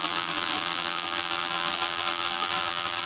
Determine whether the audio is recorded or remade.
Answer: remade